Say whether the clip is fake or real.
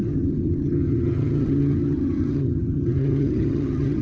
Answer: fake